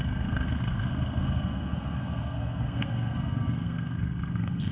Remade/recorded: remade